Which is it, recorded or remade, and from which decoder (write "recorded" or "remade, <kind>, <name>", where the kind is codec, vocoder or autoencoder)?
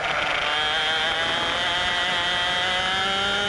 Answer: recorded